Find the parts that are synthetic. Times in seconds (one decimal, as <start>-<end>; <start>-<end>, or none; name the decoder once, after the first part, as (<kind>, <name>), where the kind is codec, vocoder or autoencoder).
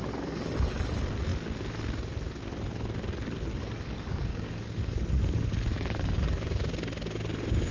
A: 0.0-0.9 (codec, DAC); 3.6-5.0; 5.7-6.6